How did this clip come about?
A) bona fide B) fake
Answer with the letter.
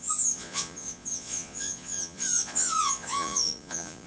B